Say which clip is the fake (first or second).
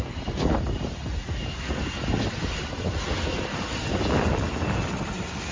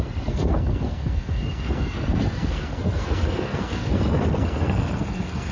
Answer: second